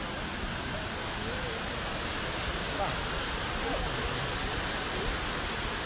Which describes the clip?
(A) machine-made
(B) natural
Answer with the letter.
B